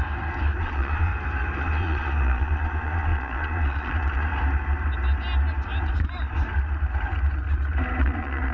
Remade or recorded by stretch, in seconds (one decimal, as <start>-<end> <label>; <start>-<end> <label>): 0.0-0.6 recorded; 0.6-1.1 remade; 1.1-1.6 recorded; 1.6-4.3 remade; 4.3-8.0 recorded; 8.0-8.5 remade

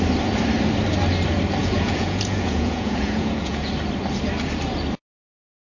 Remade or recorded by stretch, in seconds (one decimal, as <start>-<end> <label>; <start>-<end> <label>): 0.0-1.6 recorded; 1.6-3.7 remade; 3.7-5.8 recorded

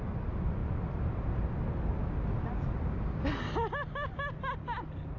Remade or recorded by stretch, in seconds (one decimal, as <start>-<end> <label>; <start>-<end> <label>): 0.0-5.2 recorded

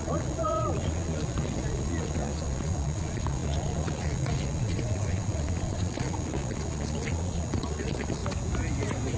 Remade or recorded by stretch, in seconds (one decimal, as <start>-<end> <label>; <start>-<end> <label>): 0.0-8.2 remade; 8.2-9.2 recorded

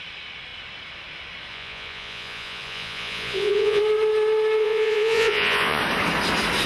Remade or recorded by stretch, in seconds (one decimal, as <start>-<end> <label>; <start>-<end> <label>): 0.0-1.5 recorded; 1.5-3.8 remade; 3.8-4.6 recorded; 4.6-5.8 remade; 5.8-6.7 recorded

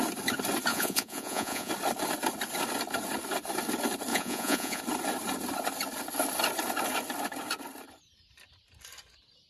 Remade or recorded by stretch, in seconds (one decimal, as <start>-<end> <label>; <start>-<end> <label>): 0.0-0.7 recorded; 0.7-1.7 remade; 1.7-4.1 recorded; 4.1-4.8 remade; 4.8-9.5 recorded

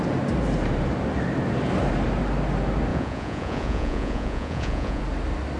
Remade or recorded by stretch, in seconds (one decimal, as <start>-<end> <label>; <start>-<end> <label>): 0.0-2.9 recorded; 2.9-5.0 remade; 5.0-5.6 recorded

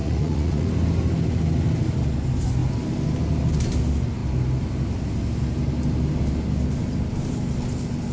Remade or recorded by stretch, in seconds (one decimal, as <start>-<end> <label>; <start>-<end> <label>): 0.0-0.7 remade; 0.7-8.1 recorded